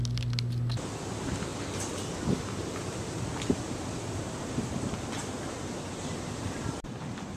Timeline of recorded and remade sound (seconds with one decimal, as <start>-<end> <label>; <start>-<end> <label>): 0.0-7.4 recorded

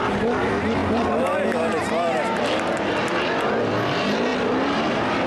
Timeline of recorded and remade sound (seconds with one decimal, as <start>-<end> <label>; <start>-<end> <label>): 0.0-5.3 recorded